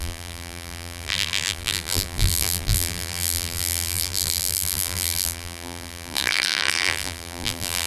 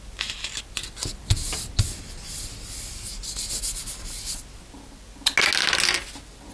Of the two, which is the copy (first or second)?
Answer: first